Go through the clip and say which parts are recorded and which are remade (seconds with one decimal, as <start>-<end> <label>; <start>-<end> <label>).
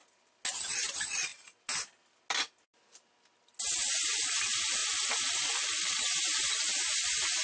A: 0.0-7.4 recorded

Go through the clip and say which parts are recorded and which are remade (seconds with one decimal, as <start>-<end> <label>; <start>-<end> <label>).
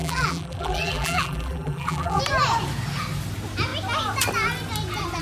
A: 0.0-2.2 remade; 2.2-5.2 recorded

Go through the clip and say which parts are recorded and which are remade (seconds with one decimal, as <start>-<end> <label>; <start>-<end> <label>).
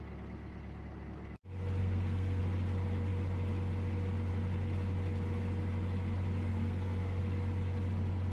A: 0.0-1.8 recorded; 1.8-2.4 remade; 2.4-6.5 recorded; 6.5-7.2 remade; 7.2-8.3 recorded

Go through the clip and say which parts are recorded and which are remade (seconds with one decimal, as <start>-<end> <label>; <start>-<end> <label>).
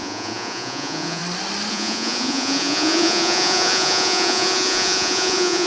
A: 0.0-1.2 remade; 1.2-1.7 recorded; 1.7-5.7 remade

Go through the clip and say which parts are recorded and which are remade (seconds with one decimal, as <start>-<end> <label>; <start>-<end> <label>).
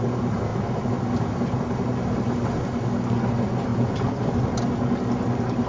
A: 0.0-5.7 recorded